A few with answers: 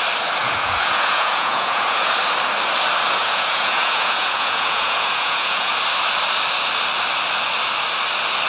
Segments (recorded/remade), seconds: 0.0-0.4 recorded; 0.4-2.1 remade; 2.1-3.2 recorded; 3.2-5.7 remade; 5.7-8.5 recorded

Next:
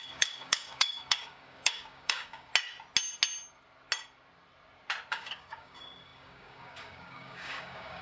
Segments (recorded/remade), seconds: 0.0-2.5 remade; 2.5-5.1 recorded; 5.1-8.0 remade

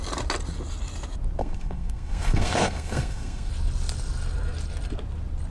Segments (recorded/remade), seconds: 0.0-1.4 recorded; 1.4-3.5 remade; 3.5-5.5 recorded

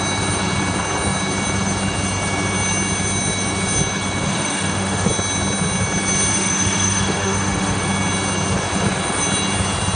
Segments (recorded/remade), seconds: 0.0-4.3 recorded; 4.3-5.1 remade; 5.1-6.3 recorded; 6.3-7.8 remade; 7.8-10.0 recorded

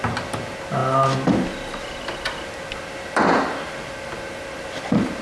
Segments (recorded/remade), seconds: 0.0-5.2 recorded

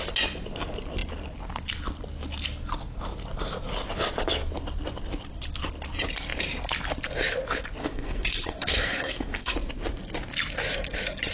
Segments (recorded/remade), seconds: 0.0-7.8 recorded; 7.8-9.5 remade; 9.5-11.3 recorded

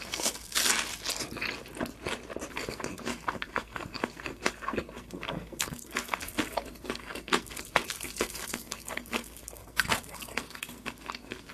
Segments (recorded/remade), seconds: 0.0-0.6 remade; 0.6-2.5 recorded; 2.5-11.5 remade